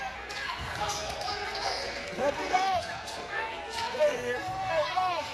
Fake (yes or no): yes